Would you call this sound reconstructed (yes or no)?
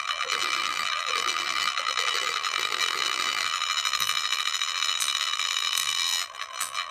yes